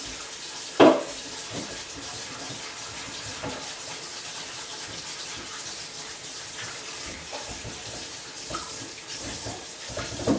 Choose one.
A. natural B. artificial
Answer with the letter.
B